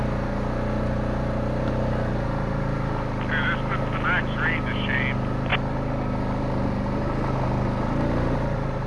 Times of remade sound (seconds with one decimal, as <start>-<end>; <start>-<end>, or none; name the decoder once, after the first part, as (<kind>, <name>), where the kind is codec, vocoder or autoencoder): none